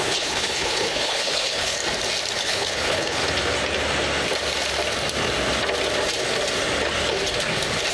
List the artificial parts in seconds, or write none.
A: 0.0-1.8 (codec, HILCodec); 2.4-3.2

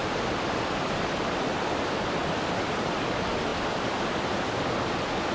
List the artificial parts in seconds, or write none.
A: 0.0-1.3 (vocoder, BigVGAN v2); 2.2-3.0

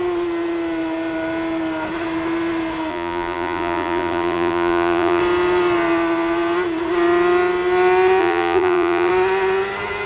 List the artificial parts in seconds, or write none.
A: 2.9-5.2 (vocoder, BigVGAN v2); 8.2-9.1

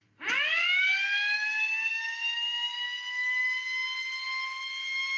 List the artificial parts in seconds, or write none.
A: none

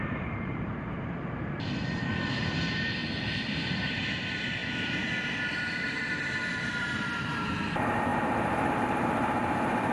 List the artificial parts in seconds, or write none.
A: 0.0-3.0 (vocoder, BigVGAN v2); 3.5-4.6; 5.5-6.0; 6.7-9.9

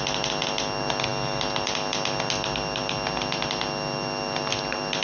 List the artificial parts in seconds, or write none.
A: none